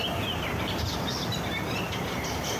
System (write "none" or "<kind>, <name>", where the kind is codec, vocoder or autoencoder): vocoder, BigVGAN v2